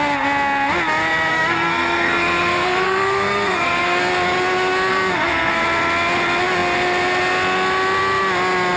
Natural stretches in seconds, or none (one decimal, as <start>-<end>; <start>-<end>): 0.0-1.3; 4.1-4.9; 5.6-8.8